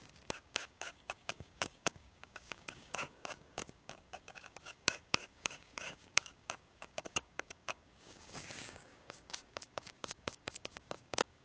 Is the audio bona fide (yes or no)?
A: no